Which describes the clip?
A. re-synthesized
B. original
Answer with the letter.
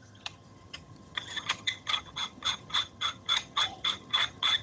A